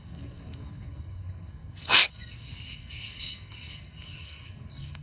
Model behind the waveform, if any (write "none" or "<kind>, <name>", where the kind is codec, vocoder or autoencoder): codec, SNAC